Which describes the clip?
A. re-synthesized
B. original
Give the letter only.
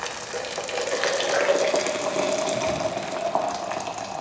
B